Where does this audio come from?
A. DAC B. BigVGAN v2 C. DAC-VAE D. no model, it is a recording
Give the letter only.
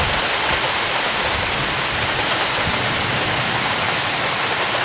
D